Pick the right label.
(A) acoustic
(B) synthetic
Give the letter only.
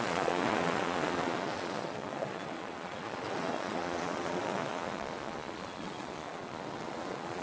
B